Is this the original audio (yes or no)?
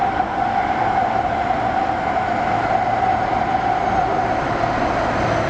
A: yes